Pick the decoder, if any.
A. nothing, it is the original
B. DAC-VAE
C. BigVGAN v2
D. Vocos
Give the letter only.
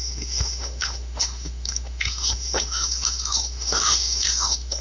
B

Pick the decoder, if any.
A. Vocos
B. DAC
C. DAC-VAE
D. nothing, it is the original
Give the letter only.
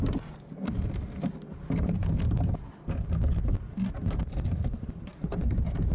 D